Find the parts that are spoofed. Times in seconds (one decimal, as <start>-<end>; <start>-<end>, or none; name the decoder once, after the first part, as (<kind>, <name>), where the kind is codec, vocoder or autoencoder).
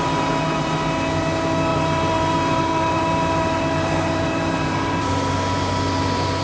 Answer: 1.7-5.1 (vocoder, BigVGAN v2)